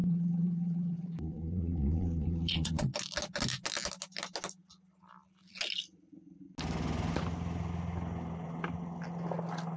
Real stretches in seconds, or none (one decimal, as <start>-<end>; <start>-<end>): 2.9-9.8